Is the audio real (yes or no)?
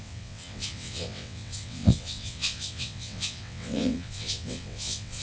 no